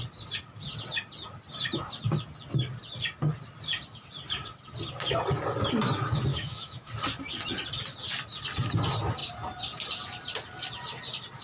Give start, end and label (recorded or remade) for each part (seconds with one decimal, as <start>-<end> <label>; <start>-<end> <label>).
0.0-6.3 recorded; 6.3-6.9 remade; 6.9-11.4 recorded